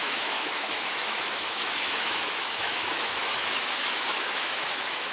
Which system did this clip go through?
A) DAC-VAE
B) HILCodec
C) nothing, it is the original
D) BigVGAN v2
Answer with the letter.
A